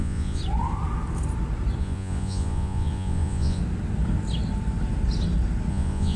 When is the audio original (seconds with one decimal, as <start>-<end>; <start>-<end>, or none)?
0.4-1.8; 3.6-5.7

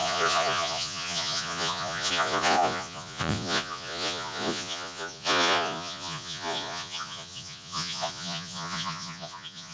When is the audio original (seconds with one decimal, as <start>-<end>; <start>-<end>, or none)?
none

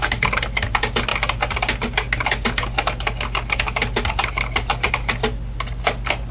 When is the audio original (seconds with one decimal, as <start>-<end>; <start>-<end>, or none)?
0.0-6.3

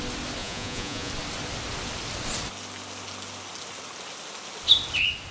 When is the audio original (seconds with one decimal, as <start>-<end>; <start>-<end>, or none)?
0.0-0.4; 1.1-5.3

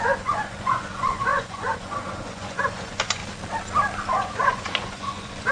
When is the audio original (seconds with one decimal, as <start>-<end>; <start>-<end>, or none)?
3.2-4.1

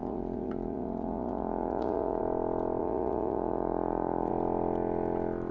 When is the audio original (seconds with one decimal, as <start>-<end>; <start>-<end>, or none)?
2.2-2.8; 4.3-5.5